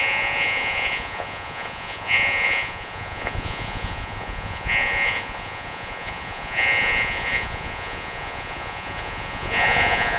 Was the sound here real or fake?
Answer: fake